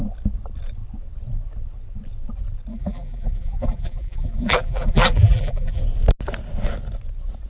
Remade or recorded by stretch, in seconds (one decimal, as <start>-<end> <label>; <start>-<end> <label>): 0.0-2.7 recorded; 2.7-5.8 remade; 5.8-7.5 recorded